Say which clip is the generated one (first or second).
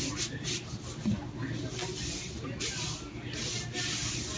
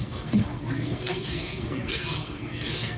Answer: second